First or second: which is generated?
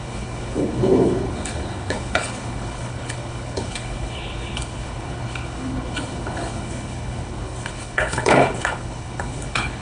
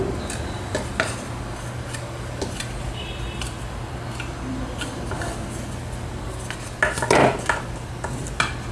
first